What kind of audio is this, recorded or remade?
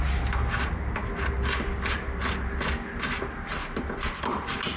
recorded